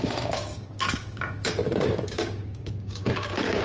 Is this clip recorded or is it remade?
remade